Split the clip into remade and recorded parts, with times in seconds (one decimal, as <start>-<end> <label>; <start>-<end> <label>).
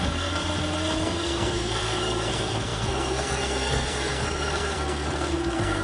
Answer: 0.0-0.4 remade; 0.4-1.0 recorded; 1.0-5.8 remade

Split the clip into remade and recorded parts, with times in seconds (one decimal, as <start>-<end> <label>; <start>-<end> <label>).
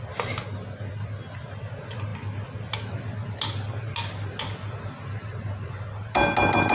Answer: 0.0-6.7 recorded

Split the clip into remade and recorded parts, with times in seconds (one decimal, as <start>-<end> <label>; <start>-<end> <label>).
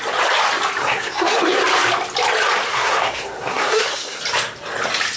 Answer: 0.0-0.8 recorded; 0.8-1.6 remade; 1.6-2.7 recorded; 2.7-4.2 remade; 4.2-5.2 recorded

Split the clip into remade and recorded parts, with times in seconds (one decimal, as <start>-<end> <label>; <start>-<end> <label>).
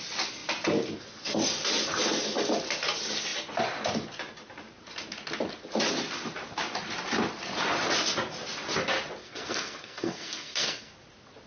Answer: 0.0-9.2 recorded; 9.2-10.9 remade; 10.9-11.5 recorded